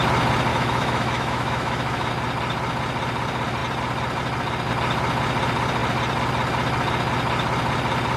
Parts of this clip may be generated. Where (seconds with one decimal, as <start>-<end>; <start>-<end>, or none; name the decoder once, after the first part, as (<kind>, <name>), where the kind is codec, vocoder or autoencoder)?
0.5-2.1 (autoencoder, DAC-VAE)